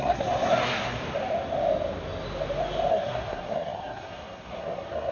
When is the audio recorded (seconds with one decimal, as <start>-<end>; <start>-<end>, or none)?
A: 1.0-2.9